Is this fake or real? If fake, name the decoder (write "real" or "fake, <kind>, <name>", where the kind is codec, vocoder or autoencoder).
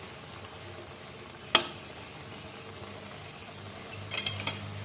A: real